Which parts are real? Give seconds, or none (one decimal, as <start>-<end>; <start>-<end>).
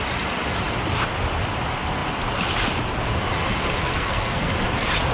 0.0-3.8; 4.5-5.1